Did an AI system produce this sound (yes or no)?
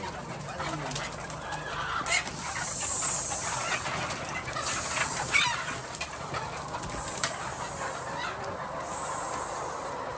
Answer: no